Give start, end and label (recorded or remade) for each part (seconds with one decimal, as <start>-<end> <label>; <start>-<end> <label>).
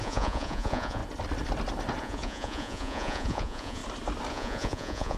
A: 0.0-1.0 remade; 1.0-2.0 recorded; 2.0-3.8 remade; 3.8-4.3 recorded; 4.3-5.2 remade